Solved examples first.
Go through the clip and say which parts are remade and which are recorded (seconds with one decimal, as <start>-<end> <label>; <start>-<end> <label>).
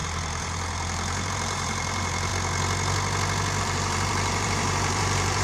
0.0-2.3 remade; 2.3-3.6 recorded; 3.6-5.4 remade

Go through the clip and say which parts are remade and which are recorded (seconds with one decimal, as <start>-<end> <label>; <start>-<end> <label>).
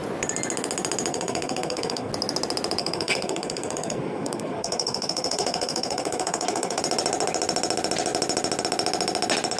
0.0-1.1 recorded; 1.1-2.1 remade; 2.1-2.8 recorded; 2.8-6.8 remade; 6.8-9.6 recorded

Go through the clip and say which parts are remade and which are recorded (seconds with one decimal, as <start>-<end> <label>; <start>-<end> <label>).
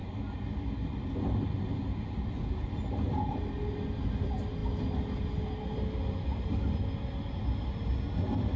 0.0-8.6 recorded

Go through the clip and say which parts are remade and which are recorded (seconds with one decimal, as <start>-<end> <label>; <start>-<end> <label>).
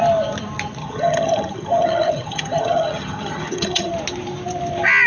0.0-0.8 recorded; 0.8-3.9 remade; 3.9-5.1 recorded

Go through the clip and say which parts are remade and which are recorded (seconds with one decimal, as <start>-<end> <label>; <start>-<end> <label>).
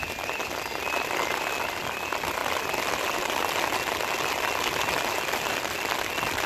0.0-6.5 recorded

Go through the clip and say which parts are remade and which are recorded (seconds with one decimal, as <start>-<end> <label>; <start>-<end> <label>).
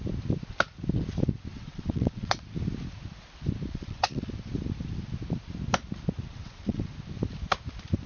0.0-1.5 recorded; 1.5-2.4 remade; 2.4-3.7 recorded; 3.7-4.2 remade; 4.2-6.3 recorded; 6.3-6.9 remade; 6.9-8.1 recorded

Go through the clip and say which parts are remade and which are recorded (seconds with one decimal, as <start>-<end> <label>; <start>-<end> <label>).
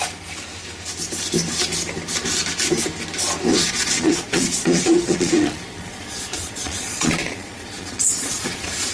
0.0-3.5 recorded; 3.5-8.9 remade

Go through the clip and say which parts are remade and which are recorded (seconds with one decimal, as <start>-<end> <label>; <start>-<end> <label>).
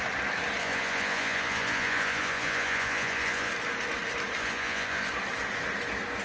0.0-0.6 recorded; 0.6-3.5 remade; 3.5-4.4 recorded; 4.4-5.1 remade; 5.1-6.2 recorded